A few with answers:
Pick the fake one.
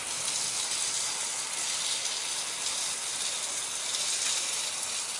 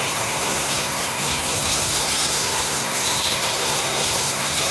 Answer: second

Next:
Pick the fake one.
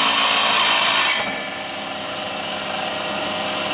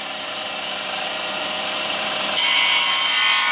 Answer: second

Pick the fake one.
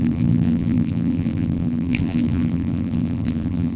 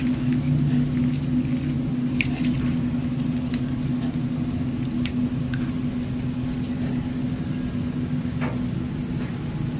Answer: first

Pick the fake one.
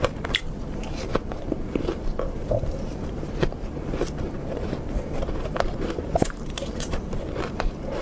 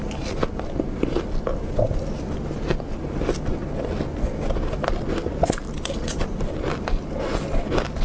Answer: first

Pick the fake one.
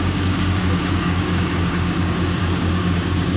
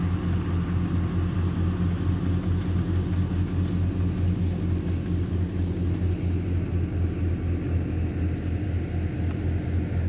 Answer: first